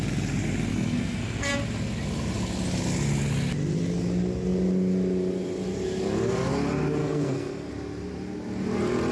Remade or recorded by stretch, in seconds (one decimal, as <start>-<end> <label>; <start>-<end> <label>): 0.0-0.7 recorded; 0.7-1.5 remade; 1.5-7.0 recorded; 7.0-7.7 remade; 7.7-9.1 recorded